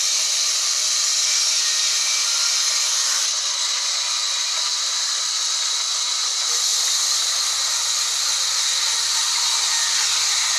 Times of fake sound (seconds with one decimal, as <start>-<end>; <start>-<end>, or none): none